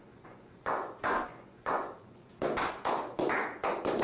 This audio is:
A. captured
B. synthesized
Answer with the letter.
B